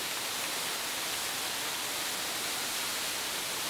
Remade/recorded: recorded